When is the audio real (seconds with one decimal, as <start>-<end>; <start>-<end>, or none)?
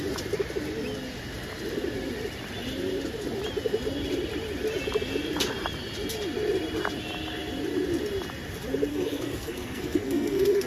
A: 0.0-8.9